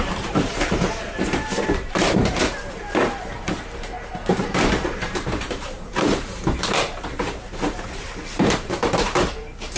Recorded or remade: remade